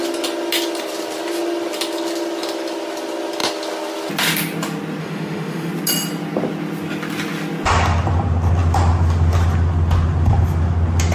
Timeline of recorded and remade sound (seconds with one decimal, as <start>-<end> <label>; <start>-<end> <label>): 0.0-5.0 recorded; 5.0-5.7 remade; 5.7-11.1 recorded